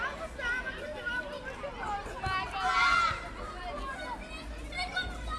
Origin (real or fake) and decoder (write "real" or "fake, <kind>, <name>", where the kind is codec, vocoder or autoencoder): real